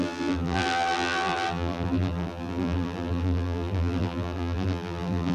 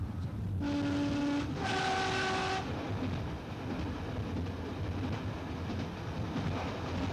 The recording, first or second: second